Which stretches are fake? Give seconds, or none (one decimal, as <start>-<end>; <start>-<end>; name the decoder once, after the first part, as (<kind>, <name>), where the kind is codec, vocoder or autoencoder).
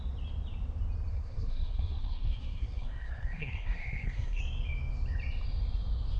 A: 1.1-4.4 (codec, SNAC)